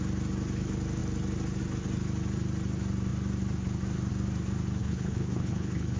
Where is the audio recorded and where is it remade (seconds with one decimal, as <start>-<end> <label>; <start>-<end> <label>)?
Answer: 0.0-4.8 recorded; 4.8-6.0 remade